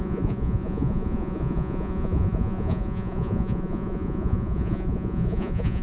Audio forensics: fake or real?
fake